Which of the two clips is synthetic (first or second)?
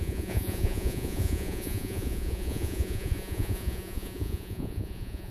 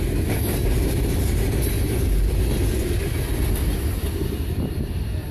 first